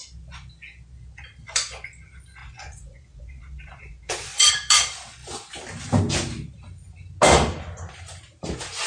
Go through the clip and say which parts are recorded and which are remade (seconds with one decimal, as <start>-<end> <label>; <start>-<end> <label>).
0.0-2.4 recorded; 2.4-4.5 remade; 4.5-8.9 recorded